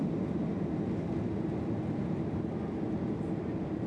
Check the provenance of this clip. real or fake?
real